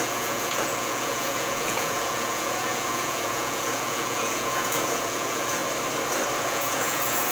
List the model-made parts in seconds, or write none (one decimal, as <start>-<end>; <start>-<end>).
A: 0.0-5.6; 6.4-7.3